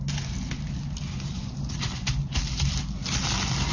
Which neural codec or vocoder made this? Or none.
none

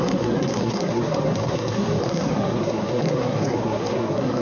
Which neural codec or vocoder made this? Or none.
codec, SNAC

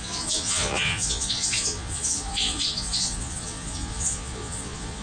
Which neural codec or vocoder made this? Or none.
vocoder, Vocos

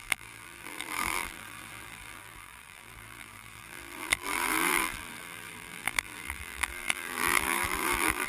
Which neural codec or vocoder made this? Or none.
vocoder, BigVGAN v2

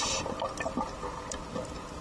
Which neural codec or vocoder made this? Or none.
none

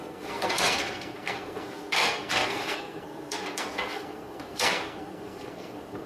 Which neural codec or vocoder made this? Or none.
codec, SNAC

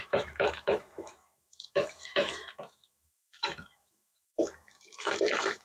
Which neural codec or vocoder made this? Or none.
autoencoder, DAC-VAE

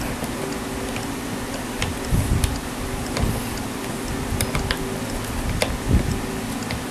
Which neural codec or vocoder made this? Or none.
none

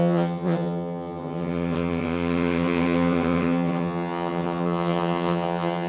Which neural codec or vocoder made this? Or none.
vocoder, HiFi-GAN